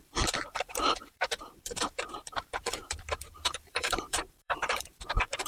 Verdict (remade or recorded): remade